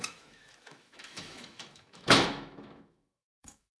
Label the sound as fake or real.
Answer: fake